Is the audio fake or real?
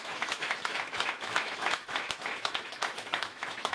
fake